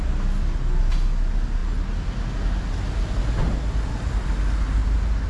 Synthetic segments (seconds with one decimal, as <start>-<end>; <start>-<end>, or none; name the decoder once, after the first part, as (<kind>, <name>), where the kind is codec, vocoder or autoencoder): none

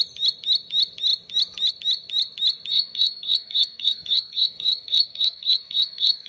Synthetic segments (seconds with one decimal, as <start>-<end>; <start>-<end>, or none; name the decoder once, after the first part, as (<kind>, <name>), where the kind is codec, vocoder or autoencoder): 2.7-6.3 (codec, SNAC)

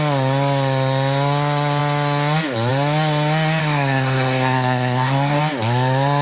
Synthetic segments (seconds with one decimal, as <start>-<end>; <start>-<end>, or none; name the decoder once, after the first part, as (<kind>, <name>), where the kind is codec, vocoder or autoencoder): 3.6-5.4 (codec, SNAC)

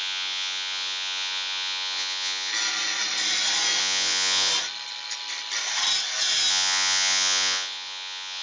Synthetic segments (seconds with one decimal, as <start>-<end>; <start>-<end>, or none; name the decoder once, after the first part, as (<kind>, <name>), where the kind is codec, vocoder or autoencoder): 0.0-2.5 (vocoder, Vocos); 3.8-4.5; 6.5-8.4

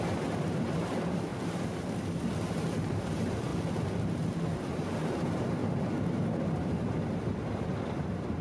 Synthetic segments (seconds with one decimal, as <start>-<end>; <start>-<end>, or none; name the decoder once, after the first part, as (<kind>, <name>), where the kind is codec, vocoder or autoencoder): 0.0-1.3 (vocoder, BigVGAN v2); 2.5-3.5; 4.6-8.4

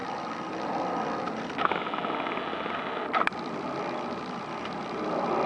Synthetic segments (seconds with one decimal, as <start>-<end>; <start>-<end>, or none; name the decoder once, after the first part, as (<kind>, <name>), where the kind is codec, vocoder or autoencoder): none